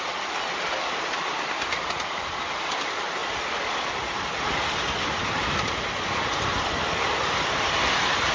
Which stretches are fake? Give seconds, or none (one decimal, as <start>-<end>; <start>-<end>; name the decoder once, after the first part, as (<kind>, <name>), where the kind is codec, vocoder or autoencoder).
0.0-3.2 (vocoder, BigVGAN v2); 4.7-8.3